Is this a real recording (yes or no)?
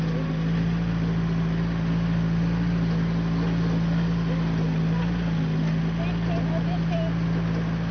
yes